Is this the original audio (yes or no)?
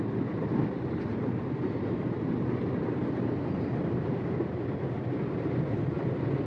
yes